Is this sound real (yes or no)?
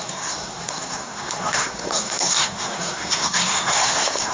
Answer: no